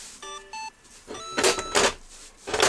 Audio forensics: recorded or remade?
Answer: recorded